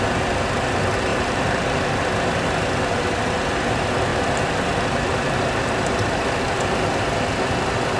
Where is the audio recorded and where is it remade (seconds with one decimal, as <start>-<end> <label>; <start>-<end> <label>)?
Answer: 0.0-1.1 recorded; 1.1-1.9 remade; 1.9-4.1 recorded; 4.1-6.4 remade; 6.4-8.0 recorded